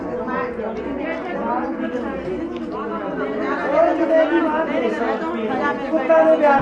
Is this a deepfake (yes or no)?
no